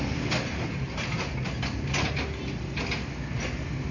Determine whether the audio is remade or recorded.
recorded